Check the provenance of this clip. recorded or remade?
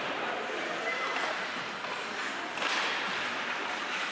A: recorded